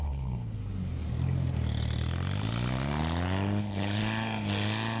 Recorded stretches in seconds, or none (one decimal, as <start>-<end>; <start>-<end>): 0.6-3.6; 4.0-5.0